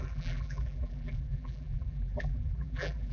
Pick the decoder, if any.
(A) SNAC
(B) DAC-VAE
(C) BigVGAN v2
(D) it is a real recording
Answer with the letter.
C